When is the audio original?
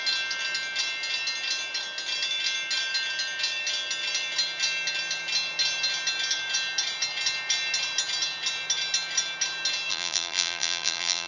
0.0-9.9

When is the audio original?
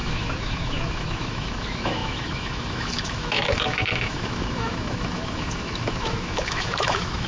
none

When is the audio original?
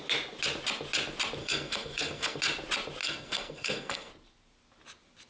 0.0-1.4; 2.4-3.0; 4.1-5.3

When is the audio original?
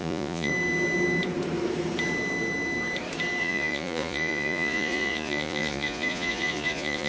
0.5-3.4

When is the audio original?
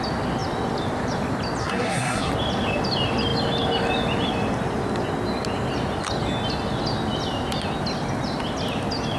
0.0-1.6; 2.3-9.2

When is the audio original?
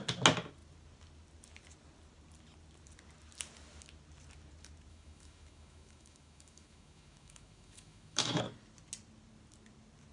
0.0-4.9; 8.4-10.1